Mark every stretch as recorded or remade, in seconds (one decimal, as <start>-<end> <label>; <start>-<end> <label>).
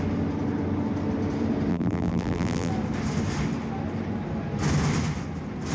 0.0-1.7 recorded; 1.7-2.7 remade; 2.7-5.7 recorded